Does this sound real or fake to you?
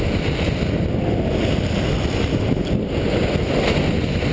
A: real